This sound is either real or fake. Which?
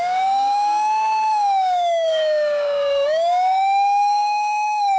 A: fake